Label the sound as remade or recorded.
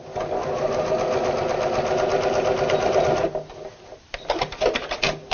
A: recorded